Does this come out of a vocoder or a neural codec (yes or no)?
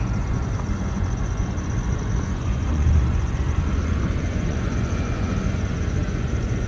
yes